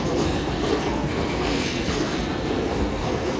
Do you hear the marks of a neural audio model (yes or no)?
yes